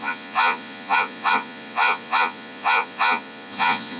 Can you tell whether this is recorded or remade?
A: remade